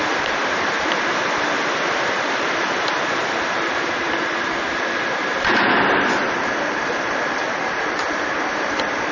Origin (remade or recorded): remade